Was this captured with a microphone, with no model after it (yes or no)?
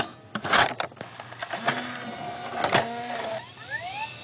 yes